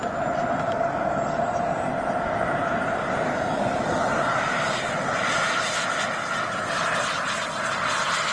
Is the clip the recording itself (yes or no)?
yes